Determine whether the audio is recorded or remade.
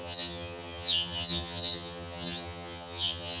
remade